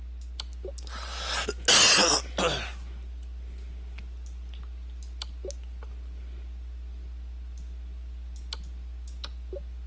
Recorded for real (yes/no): yes